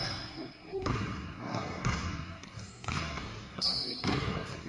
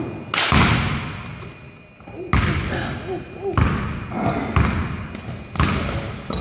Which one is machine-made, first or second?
first